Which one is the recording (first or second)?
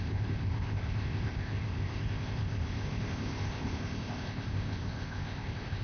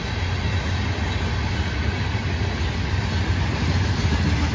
second